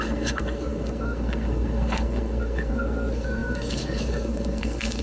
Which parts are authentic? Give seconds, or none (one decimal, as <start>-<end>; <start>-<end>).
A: none